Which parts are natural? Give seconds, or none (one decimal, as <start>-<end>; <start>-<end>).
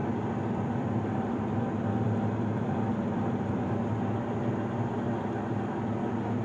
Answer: 3.8-6.4